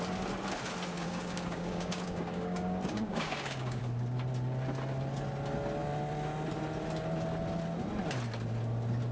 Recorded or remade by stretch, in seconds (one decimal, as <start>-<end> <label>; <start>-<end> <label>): 0.0-1.0 recorded; 1.0-3.8 remade; 3.8-9.1 recorded

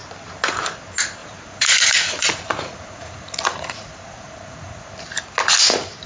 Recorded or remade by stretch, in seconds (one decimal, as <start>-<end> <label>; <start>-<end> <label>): 0.0-1.2 recorded; 1.2-4.9 remade; 4.9-6.1 recorded

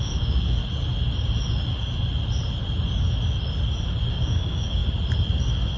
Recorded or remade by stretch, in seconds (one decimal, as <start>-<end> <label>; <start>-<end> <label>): 0.0-0.6 remade; 0.6-4.1 recorded; 4.1-4.8 remade; 4.8-5.8 recorded

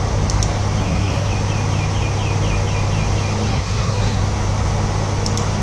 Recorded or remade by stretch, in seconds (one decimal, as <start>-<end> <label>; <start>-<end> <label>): 0.0-0.8 recorded; 0.8-1.3 remade; 1.3-3.5 recorded; 3.5-4.2 remade; 4.2-5.6 recorded

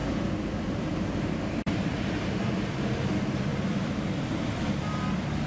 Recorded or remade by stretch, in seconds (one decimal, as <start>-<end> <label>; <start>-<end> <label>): 0.0-5.5 remade

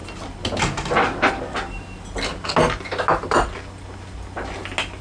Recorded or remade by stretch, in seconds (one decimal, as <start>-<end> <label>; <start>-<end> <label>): 0.0-5.0 recorded

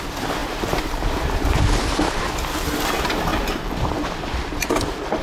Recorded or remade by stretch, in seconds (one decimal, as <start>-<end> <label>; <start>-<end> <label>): 0.0-3.3 recorded; 3.3-4.3 remade; 4.3-5.2 recorded